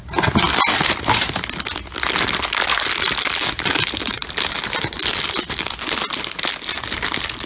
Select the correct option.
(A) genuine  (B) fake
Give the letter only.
A